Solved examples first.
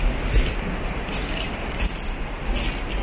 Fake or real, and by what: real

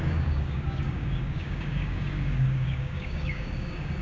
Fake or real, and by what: fake, codec, DAC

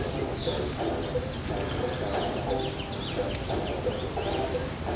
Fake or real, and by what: real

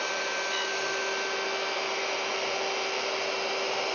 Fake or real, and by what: real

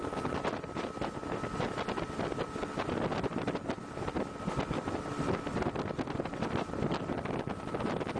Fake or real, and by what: real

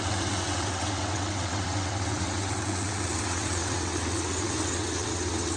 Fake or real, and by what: fake, vocoder, WaveNeXt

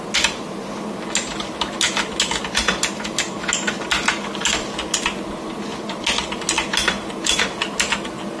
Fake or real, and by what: real